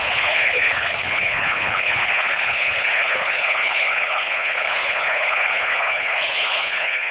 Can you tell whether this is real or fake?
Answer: fake